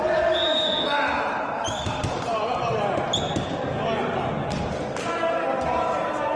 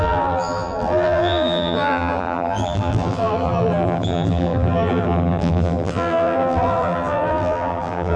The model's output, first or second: second